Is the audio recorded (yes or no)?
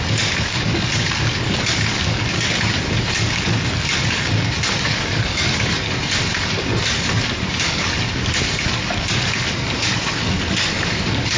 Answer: no